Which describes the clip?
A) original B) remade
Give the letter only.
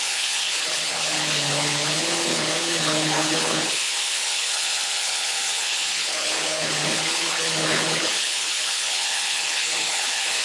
B